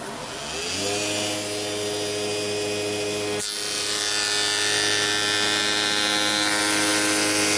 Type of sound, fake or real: real